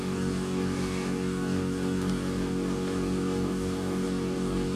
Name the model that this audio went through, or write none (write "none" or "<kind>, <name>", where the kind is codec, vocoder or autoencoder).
codec, DAC